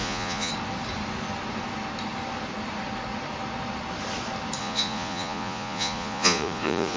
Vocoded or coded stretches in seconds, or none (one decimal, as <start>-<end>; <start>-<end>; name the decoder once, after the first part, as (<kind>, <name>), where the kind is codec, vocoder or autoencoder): 0.0-0.5 (vocoder, Vocos); 4.6-7.0